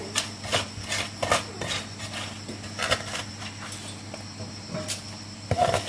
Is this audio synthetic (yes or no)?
no